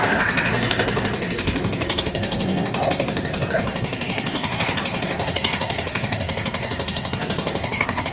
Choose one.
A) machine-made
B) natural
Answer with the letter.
A